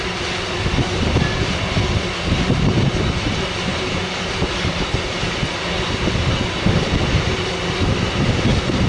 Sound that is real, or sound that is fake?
real